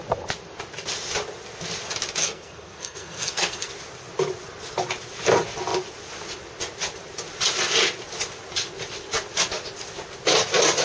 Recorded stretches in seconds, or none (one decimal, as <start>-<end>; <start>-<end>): 0.0-2.2; 3.7-10.8

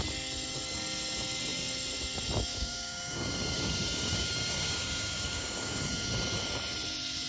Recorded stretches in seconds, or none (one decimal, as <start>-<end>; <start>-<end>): 0.0-2.5; 5.8-7.3

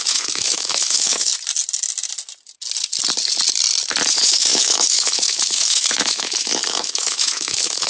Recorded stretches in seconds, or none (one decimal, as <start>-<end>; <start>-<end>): 1.3-4.1

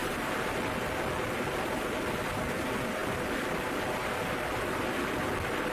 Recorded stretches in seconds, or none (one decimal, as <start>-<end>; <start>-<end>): 0.0-5.7

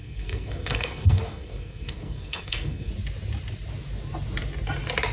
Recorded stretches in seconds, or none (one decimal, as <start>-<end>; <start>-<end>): 2.9-5.1

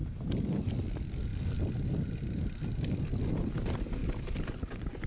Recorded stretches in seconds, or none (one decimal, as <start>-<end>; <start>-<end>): 0.7-5.1